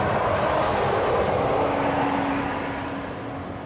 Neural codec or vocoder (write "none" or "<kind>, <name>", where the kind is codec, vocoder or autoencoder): none